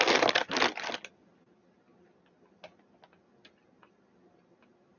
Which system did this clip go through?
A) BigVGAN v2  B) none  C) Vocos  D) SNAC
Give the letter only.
B